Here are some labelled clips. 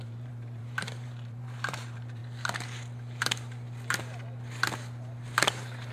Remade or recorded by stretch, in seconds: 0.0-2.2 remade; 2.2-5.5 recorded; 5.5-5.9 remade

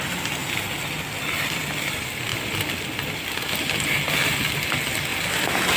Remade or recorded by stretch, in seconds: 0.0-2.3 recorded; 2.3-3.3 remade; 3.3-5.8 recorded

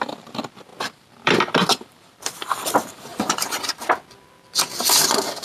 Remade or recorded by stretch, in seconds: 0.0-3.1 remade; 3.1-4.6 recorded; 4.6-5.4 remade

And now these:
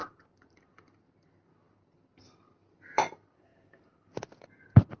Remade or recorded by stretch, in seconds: 0.0-3.0 remade; 3.0-3.5 recorded; 3.5-5.0 remade